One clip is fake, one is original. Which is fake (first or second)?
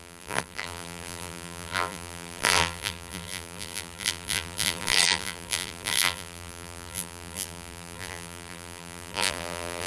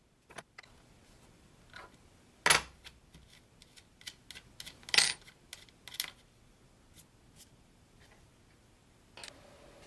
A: first